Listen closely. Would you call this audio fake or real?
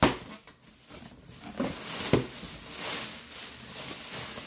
real